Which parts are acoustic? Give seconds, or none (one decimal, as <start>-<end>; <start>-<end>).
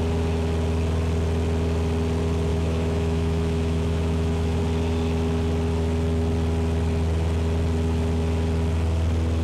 0.0-2.5; 4.6-9.4